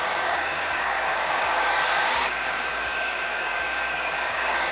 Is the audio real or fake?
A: fake